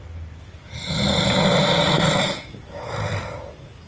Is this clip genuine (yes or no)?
yes